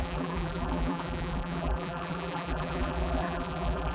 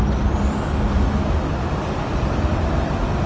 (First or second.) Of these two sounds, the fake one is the first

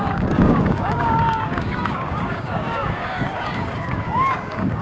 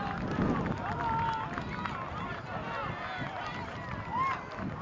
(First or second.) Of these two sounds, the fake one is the first